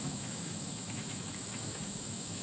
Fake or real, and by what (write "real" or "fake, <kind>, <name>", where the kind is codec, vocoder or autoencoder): fake, autoencoder, DAC-VAE